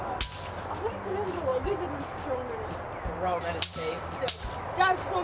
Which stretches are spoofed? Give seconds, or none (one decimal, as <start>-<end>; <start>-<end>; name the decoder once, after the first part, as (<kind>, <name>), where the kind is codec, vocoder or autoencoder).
none